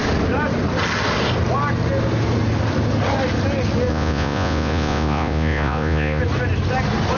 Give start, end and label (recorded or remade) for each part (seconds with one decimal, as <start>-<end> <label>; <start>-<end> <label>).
0.0-3.9 recorded; 3.9-6.2 remade; 6.2-7.2 recorded